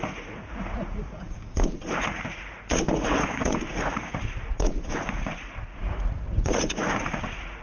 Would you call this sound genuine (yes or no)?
no